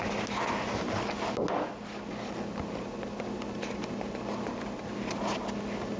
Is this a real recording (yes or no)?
yes